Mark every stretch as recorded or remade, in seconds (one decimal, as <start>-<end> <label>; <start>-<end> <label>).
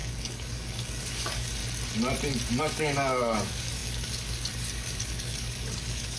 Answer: 0.0-1.6 remade; 1.6-2.6 recorded; 2.6-6.2 remade